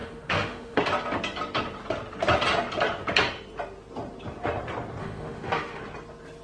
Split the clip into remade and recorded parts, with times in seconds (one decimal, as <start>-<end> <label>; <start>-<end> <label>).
0.0-0.8 remade; 0.8-5.0 recorded; 5.0-5.8 remade; 5.8-6.4 recorded